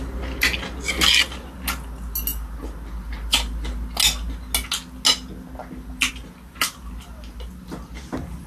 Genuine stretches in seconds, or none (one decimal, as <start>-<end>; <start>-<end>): 0.0-8.5